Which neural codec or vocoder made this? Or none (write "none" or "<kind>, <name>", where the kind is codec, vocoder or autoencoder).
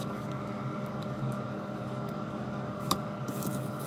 codec, DAC